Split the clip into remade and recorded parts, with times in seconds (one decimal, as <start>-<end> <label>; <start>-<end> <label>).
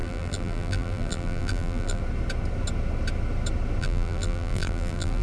0.0-2.0 remade; 2.0-3.8 recorded; 3.8-5.2 remade